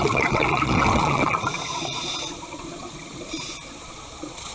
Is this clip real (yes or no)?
no